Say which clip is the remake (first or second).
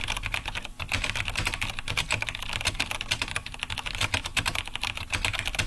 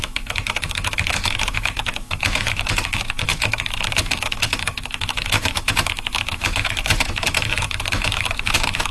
second